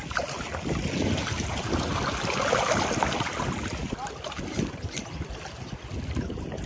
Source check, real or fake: real